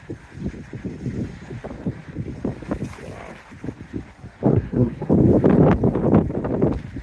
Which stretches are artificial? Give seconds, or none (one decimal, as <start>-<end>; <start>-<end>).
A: 4.5-5.1